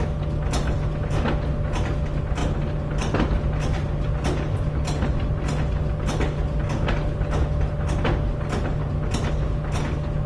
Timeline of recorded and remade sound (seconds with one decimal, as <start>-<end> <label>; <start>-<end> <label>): 0.0-10.3 recorded